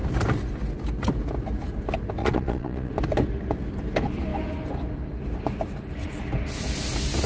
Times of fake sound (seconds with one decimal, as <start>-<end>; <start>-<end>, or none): 2.2-2.9